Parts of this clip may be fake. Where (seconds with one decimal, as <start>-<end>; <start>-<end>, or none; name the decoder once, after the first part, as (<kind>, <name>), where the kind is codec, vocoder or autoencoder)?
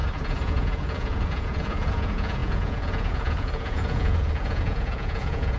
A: 0.0-5.6 (vocoder, Vocos)